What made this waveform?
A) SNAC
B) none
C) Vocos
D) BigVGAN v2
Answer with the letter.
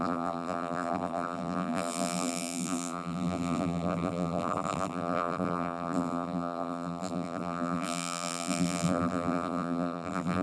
D